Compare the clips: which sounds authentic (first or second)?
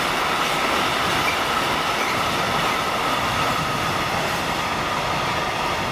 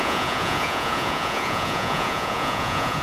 first